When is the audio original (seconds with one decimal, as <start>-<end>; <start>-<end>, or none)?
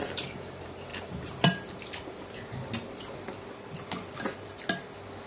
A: 0.0-5.3